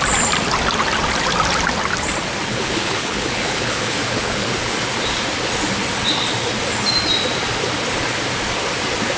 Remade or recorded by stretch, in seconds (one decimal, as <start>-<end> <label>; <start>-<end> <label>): 0.0-2.5 recorded; 2.5-4.5 remade; 4.5-9.2 recorded